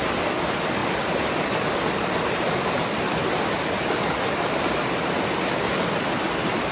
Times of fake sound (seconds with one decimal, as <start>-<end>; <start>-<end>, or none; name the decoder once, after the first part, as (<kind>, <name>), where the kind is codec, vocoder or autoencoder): none